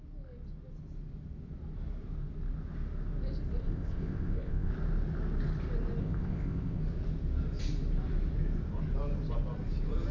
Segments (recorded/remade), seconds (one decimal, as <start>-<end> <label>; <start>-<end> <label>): 0.0-3.6 recorded; 3.6-4.7 remade; 4.7-6.0 recorded; 6.0-6.8 remade; 6.8-10.1 recorded